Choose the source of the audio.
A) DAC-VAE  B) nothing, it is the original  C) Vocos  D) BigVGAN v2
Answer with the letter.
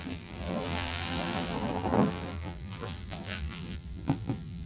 D